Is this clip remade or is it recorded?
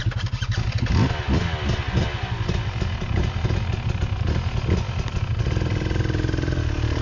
recorded